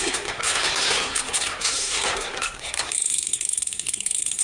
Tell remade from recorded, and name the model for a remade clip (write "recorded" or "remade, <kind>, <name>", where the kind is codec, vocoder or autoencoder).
remade, codec, SNAC